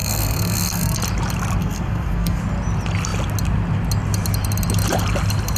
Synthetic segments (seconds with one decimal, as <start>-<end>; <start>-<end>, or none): 0.0-1.0; 1.6-2.4